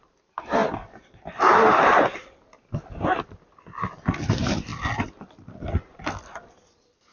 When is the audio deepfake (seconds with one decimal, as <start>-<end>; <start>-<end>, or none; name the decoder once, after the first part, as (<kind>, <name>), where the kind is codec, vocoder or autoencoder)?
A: 0.0-0.6 (vocoder, BigVGAN v2); 4.3-4.7; 6.5-7.1